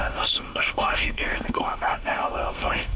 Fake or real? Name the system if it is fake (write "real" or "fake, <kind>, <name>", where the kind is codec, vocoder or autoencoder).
fake, codec, SNAC